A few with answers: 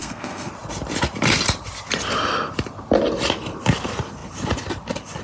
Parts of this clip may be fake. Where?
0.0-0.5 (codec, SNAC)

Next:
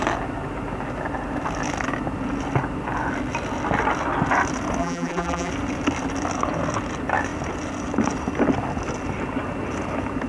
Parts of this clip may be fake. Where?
4.8-5.5 (vocoder, BigVGAN v2)

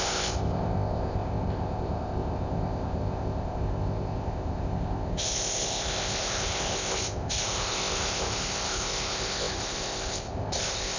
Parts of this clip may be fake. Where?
0.0-11.0 (codec, ZipCodec)